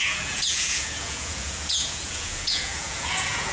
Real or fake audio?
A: fake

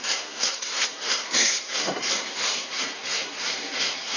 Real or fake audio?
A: fake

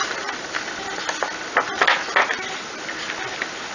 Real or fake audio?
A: real